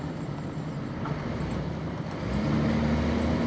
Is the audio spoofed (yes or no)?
no